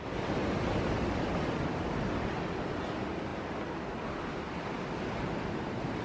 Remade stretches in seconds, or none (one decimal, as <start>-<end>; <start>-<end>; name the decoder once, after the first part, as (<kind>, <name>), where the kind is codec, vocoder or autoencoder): none

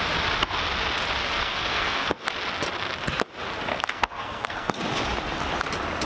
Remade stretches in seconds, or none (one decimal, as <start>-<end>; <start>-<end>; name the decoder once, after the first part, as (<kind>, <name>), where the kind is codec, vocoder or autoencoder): 1.2-2.3 (codec, SNAC); 3.7-4.8

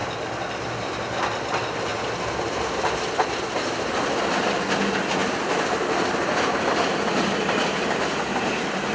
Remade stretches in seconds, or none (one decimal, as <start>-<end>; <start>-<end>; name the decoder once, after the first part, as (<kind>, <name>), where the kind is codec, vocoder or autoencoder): none

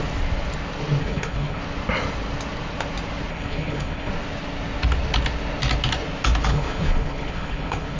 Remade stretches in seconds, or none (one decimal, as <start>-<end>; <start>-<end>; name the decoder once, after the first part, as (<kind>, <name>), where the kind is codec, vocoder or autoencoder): 1.0-1.6 (codec, HILCodec); 3.3-4.1; 6.5-8.0

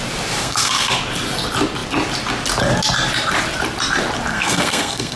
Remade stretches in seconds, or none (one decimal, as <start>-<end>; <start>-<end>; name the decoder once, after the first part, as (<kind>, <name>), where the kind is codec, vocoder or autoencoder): 0.4-1.0 (codec, SNAC); 4.3-5.2

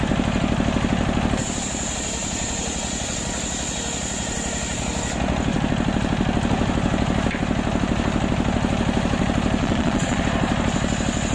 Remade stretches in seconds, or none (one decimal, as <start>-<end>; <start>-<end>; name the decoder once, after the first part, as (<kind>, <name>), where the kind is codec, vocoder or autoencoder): 9.6-10.2 (vocoder, Vocos)

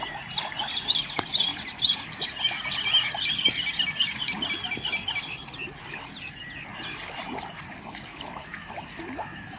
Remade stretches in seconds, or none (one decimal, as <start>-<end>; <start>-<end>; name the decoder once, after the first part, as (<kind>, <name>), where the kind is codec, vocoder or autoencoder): 8.1-8.7 (autoencoder, DAC-VAE)

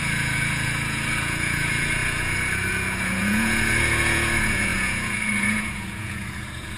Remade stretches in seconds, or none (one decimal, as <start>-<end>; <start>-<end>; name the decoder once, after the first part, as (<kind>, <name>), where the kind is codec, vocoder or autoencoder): 0.0-6.8 (vocoder, Vocos)